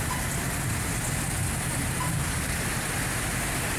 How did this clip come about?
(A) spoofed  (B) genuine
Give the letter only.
B